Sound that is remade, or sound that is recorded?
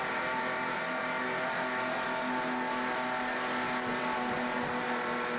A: recorded